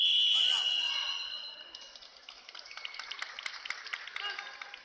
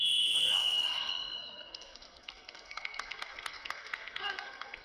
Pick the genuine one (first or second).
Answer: first